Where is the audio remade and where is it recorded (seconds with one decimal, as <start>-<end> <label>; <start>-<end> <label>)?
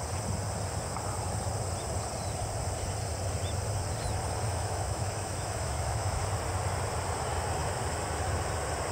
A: 0.0-4.5 recorded; 4.5-6.2 remade; 6.2-8.9 recorded